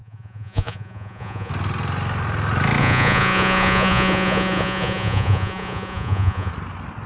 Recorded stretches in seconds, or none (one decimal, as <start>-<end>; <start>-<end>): 1.5-2.8; 6.5-7.1